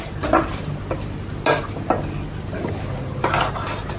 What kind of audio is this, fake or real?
real